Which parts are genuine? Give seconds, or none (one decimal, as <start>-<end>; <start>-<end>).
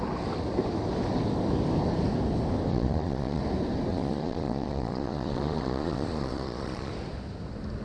0.0-2.7; 3.4-3.9; 6.9-7.8